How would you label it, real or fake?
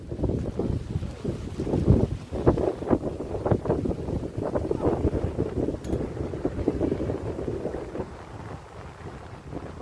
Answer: real